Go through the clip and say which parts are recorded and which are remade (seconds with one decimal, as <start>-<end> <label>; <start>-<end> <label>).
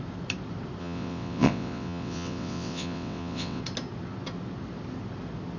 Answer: 0.0-0.8 recorded; 0.8-3.6 remade; 3.6-5.6 recorded